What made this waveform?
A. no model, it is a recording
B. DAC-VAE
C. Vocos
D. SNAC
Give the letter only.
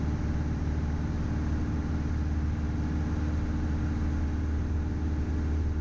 A